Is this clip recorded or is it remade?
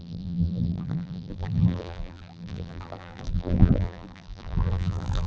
remade